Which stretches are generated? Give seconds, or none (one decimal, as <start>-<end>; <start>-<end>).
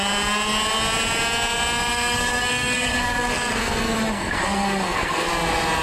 1.9-5.3